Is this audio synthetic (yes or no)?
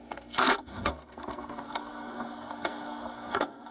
yes